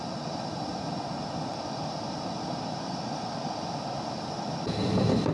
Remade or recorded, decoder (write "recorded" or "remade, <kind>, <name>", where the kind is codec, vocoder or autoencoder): recorded